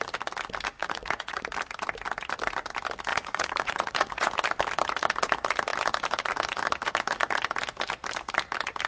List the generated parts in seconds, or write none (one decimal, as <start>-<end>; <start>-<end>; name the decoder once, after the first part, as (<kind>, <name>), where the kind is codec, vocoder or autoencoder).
0.8-1.4 (vocoder, Vocos); 3.1-4.3